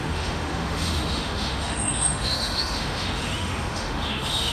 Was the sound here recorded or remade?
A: remade